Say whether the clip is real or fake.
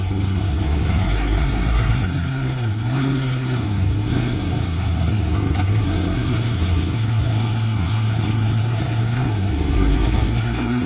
fake